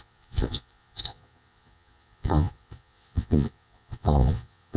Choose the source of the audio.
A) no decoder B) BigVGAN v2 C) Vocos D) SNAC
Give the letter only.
C